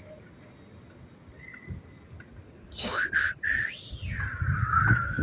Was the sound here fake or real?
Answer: real